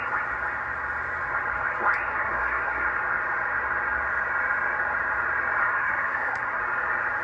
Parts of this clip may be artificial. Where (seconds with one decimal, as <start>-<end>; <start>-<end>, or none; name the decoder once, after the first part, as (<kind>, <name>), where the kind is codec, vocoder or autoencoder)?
2.1-2.9 (codec, SNAC); 5.6-6.6